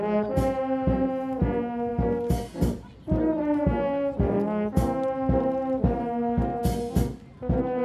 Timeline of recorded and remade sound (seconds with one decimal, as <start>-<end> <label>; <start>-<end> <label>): 0.0-7.8 recorded

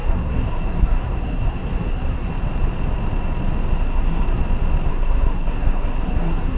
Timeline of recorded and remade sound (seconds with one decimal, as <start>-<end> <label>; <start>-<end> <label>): 0.0-2.3 remade; 2.3-3.8 recorded; 3.8-4.4 remade; 4.4-4.9 recorded; 4.9-6.6 remade

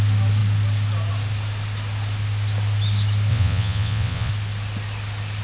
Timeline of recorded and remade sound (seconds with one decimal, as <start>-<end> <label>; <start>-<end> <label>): 0.0-3.3 recorded; 3.3-4.3 remade; 4.3-5.4 recorded

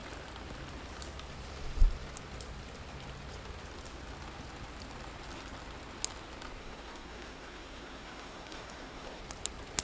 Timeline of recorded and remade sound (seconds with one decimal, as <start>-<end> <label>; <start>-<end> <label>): 0.0-6.6 recorded; 6.6-9.2 remade; 9.2-9.8 recorded

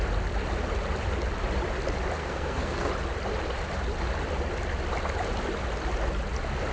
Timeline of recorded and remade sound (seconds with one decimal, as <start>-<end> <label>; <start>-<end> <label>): 0.0-2.2 recorded; 2.2-2.9 remade; 2.9-6.7 recorded

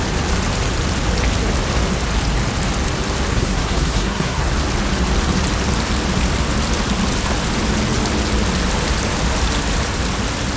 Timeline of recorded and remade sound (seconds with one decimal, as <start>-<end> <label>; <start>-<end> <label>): 0.0-3.3 recorded; 3.3-4.5 remade; 4.5-10.6 recorded

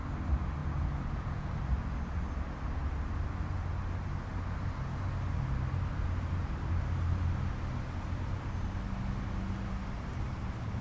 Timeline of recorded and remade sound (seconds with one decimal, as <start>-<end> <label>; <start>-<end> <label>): 0.0-0.6 recorded; 0.6-1.5 remade; 1.5-10.8 recorded